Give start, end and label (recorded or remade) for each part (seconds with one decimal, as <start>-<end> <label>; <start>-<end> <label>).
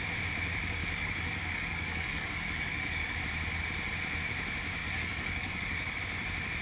0.0-0.8 recorded; 0.8-3.2 remade; 3.2-4.8 recorded; 4.8-6.0 remade; 6.0-6.6 recorded